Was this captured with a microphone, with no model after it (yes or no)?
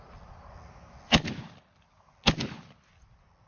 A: yes